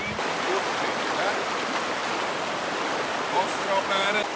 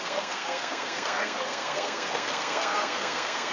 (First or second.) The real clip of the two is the first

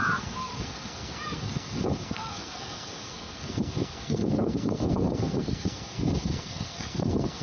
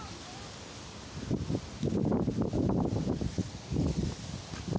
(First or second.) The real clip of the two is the second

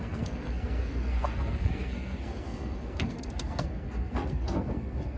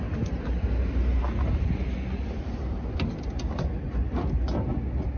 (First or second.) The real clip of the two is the second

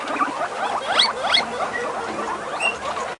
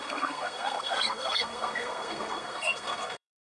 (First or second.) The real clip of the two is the first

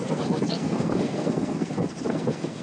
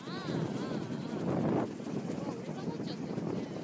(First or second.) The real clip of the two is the second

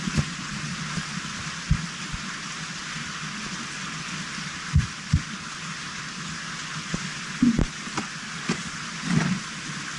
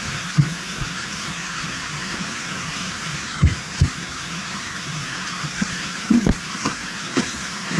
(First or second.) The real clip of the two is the first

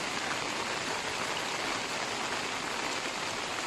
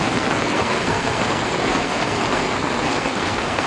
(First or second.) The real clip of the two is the first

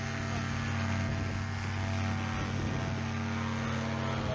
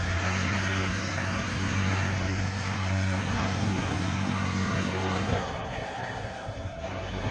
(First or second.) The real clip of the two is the first